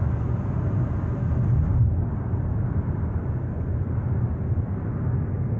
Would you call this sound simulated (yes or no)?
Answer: no